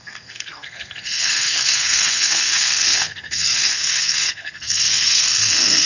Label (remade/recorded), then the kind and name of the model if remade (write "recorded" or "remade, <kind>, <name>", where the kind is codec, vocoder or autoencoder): remade, codec, SNAC